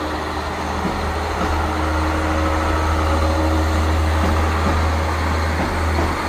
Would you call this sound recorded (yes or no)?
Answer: yes